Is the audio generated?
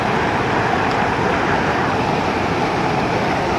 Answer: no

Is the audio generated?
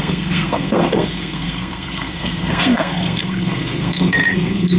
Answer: yes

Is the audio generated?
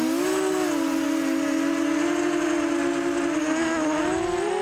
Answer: no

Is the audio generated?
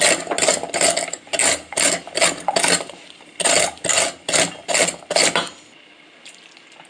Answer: no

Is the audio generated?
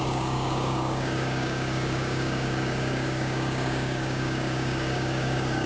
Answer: yes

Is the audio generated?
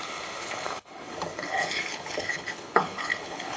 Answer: yes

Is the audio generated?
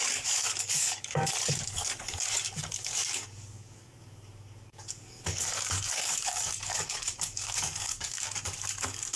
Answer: yes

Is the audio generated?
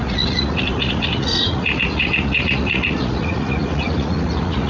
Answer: yes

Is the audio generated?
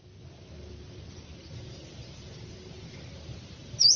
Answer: no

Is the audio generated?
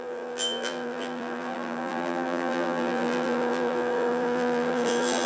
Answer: yes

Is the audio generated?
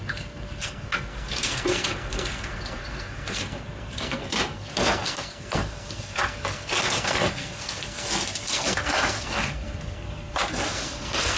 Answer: yes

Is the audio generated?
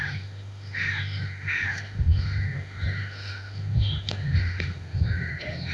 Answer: yes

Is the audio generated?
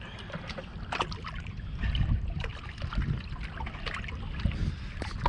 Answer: no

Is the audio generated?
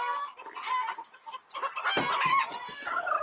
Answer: no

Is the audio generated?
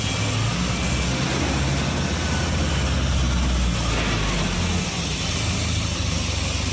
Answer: no